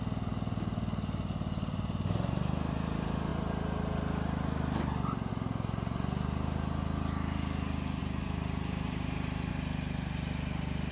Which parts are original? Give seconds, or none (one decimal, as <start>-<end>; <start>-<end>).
0.0-8.0; 9.5-10.9